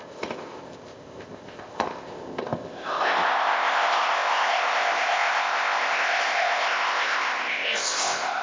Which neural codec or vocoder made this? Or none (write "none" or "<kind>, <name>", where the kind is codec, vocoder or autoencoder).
codec, ZipCodec